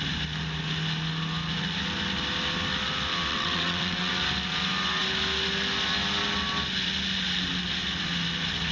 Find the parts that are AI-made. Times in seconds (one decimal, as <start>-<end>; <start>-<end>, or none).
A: 3.3-4.1